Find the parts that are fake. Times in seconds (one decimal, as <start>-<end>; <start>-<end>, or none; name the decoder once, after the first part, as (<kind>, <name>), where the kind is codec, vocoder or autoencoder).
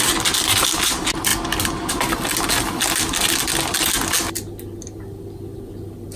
none